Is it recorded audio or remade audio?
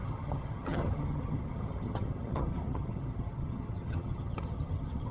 remade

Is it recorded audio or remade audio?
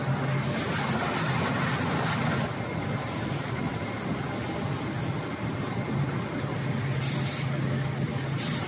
recorded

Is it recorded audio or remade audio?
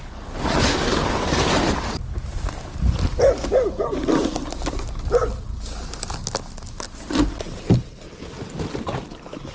recorded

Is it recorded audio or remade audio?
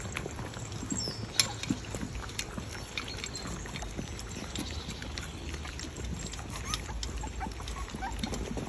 recorded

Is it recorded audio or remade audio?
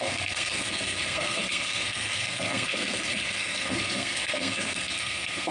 remade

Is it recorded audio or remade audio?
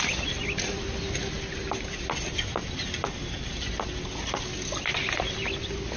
recorded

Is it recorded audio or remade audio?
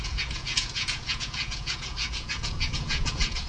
remade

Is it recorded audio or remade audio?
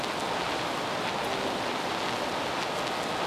recorded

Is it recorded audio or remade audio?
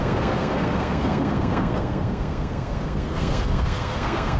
remade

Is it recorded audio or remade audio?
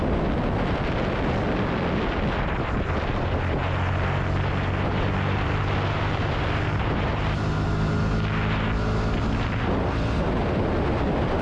recorded